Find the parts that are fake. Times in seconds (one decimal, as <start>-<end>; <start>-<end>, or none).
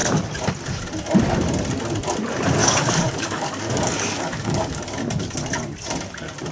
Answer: 2.6-5.0